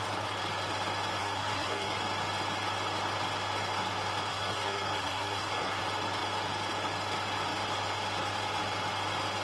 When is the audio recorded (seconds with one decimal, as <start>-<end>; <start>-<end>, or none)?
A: 0.0-1.2; 2.0-4.3; 5.8-9.4